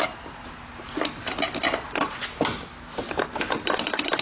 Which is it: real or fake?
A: real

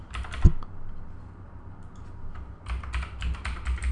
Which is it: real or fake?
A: real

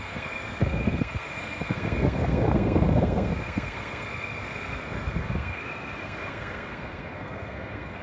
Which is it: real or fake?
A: fake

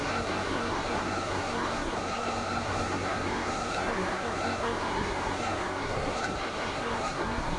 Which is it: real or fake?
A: fake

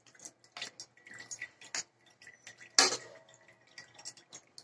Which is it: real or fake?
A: real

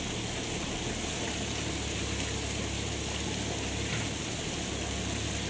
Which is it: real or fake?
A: real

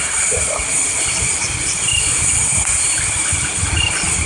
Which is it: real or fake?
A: real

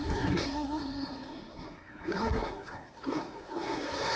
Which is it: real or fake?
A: fake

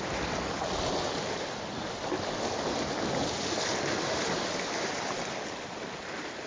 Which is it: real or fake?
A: real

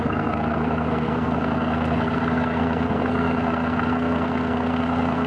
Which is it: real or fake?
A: fake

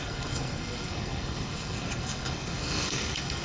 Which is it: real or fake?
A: fake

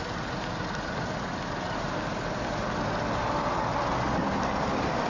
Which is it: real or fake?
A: real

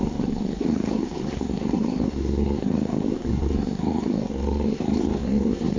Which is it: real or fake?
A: fake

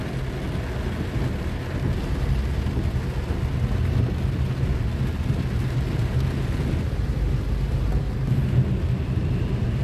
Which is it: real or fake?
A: real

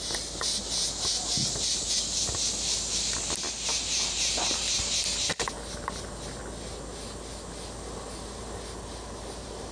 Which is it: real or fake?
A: real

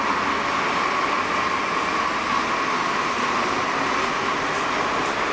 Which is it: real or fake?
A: real